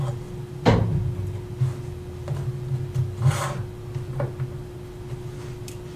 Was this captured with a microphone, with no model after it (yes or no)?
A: yes